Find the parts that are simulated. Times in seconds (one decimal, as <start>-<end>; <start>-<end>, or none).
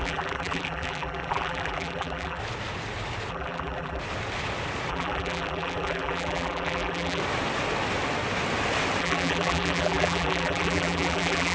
0.0-2.4; 3.3-4.0; 4.9-7.2; 9.0-11.5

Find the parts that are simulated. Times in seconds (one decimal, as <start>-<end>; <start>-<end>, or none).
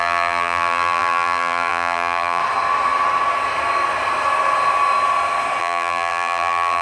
0.0-2.4; 5.6-6.8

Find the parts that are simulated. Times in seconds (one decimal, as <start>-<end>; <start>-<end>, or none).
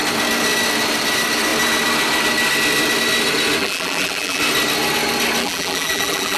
3.6-4.4; 5.4-6.4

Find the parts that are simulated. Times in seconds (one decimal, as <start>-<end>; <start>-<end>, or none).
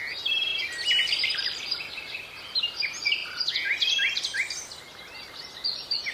0.0-0.5; 1.1-3.2; 5.3-6.1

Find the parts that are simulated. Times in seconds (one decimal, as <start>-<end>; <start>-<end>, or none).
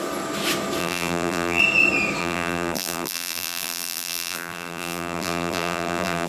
0.8-1.6; 2.2-6.3